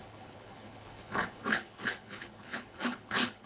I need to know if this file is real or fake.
fake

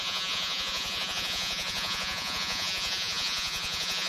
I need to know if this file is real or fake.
fake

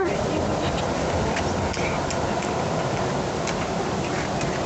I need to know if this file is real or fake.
real